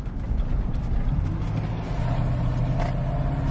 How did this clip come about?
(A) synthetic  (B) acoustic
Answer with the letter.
B